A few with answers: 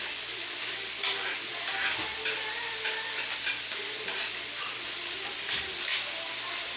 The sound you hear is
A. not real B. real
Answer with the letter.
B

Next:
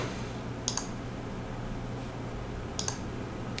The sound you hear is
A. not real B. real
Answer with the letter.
B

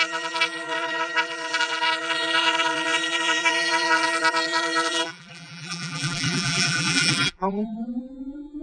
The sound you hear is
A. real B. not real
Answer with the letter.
B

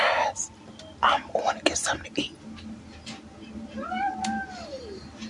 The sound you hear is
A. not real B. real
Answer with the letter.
B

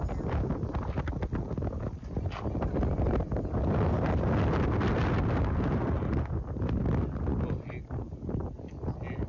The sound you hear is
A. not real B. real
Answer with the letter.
B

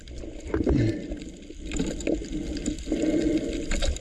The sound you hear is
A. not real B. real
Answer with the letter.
B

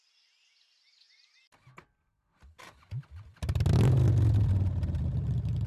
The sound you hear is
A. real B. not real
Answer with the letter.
A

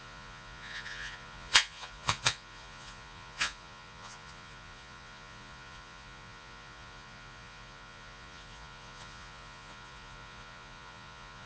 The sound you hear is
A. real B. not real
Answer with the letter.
B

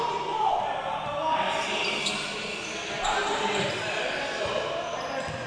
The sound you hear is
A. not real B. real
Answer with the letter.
B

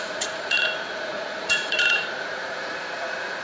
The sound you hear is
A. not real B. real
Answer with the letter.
A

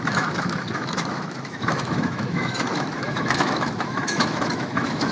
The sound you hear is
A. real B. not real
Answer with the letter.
B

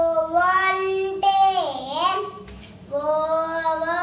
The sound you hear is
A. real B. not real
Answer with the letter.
A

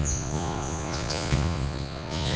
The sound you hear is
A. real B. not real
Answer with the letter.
B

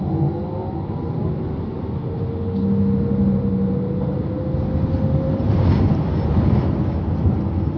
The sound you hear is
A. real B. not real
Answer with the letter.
A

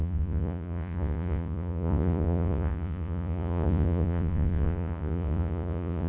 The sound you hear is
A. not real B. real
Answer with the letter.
A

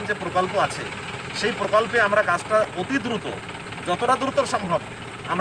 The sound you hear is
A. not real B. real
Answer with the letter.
B